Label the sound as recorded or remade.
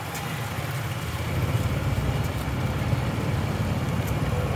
recorded